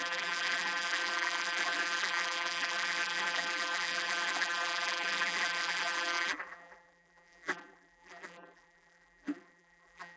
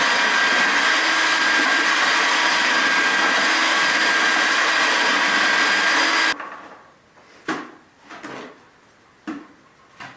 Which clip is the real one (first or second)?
second